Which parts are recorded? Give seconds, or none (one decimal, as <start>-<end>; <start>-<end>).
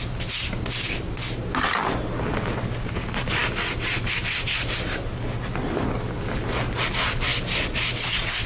0.0-8.5